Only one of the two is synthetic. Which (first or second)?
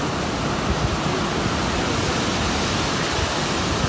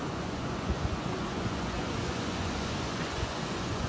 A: second